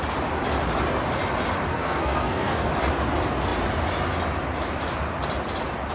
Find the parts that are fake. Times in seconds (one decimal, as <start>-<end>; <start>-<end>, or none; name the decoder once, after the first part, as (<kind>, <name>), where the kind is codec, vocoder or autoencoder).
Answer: 1.7-2.7 (codec, SNAC)